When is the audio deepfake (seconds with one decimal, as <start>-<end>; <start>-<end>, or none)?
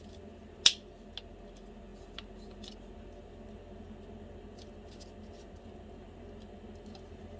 none